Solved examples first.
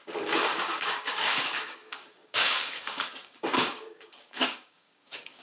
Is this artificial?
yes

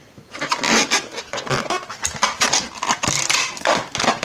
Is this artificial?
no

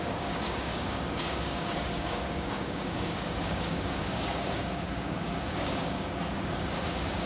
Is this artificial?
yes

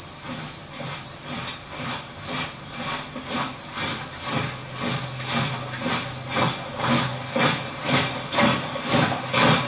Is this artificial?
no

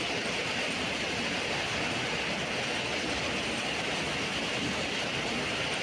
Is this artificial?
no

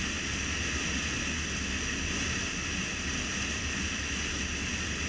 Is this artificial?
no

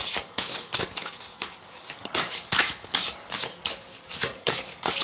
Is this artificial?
yes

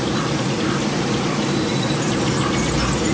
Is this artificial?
no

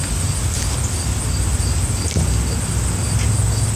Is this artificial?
no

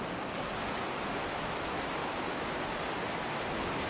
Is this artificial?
no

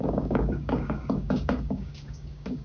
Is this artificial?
yes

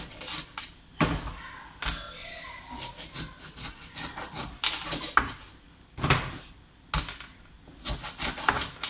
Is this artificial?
no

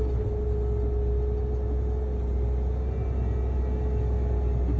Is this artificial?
no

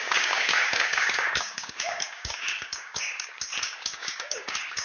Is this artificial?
yes